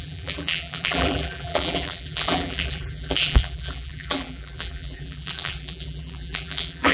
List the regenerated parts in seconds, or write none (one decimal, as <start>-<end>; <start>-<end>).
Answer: 0.0-6.9